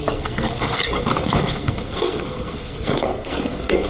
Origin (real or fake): fake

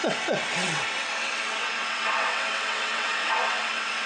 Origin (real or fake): fake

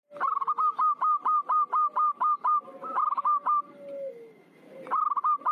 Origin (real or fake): real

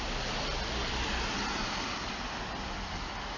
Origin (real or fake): real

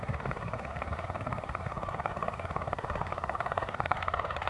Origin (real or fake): fake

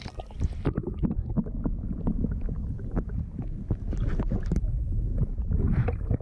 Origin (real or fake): real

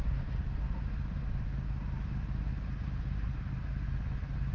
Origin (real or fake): real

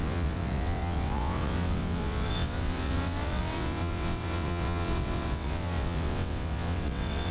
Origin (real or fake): fake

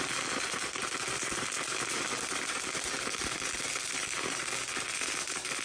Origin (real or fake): real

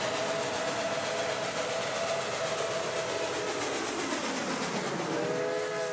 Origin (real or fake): real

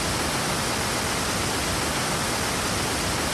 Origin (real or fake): real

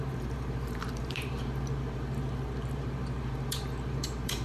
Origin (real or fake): fake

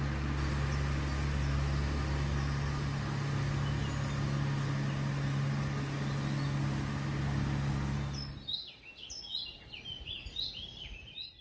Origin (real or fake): real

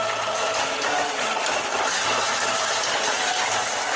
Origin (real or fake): real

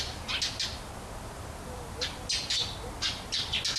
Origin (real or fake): real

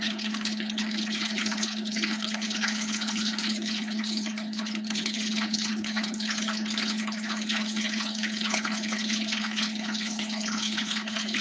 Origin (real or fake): fake